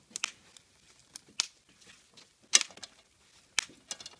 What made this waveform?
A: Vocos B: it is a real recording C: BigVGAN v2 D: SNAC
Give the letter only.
B